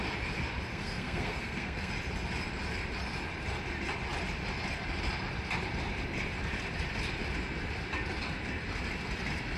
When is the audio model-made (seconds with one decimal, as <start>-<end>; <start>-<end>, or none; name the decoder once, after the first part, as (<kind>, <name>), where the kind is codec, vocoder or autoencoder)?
0.7-1.9 (codec, SNAC)